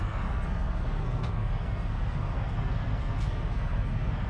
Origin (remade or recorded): remade